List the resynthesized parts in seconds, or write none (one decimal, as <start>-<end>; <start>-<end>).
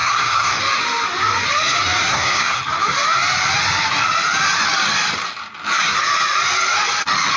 0.0-0.6; 2.1-2.6